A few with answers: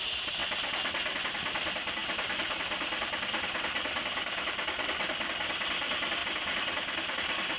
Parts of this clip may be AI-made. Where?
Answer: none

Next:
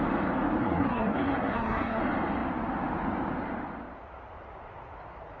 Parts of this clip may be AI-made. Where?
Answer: 0.6-2.0 (codec, SNAC)

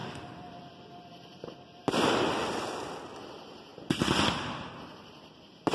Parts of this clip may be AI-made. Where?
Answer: 0.0-1.8 (vocoder, BigVGAN v2)

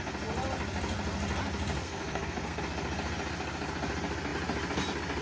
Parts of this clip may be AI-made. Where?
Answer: 1.8-2.6 (codec, SNAC)

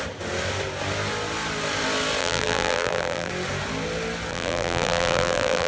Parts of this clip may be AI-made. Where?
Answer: 2.2-3.3 (vocoder, BigVGAN v2); 4.3-5.7

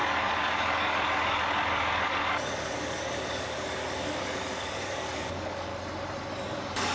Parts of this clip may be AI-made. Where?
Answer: 0.0-5.7 (codec, DAC); 6.3-6.9

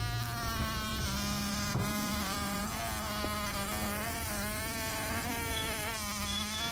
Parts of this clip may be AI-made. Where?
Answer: 1.9-2.6 (vocoder, BigVGAN v2)